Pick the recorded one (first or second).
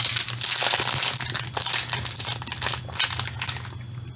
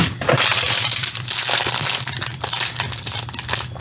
first